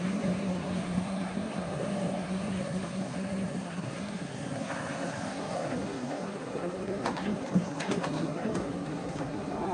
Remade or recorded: remade